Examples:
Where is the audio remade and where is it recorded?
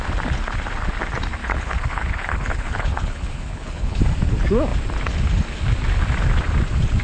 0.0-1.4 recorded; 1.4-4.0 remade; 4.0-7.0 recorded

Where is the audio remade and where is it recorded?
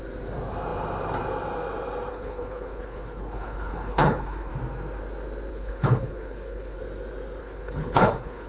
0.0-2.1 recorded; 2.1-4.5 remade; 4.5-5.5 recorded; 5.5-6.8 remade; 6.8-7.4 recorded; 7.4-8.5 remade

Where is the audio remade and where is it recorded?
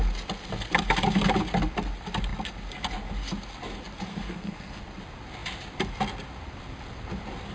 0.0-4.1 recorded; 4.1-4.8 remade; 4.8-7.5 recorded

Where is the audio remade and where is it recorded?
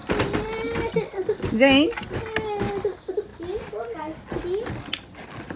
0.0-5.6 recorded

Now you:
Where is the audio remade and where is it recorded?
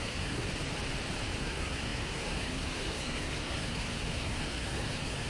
0.0-0.5 remade; 0.5-1.4 recorded; 1.4-5.3 remade